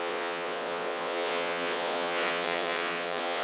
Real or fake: fake